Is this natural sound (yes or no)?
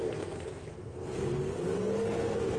no